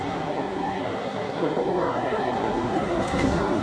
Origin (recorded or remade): remade